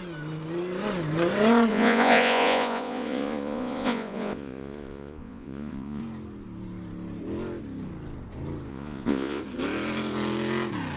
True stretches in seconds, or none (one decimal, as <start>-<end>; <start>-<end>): 0.0-1.7; 6.0-8.7; 9.4-11.0